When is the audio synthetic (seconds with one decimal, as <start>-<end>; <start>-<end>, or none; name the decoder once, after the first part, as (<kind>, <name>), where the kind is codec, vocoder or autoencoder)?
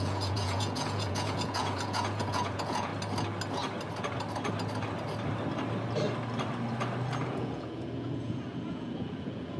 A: 0.0-2.9 (vocoder, Vocos); 7.3-9.6